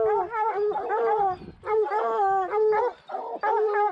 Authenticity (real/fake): real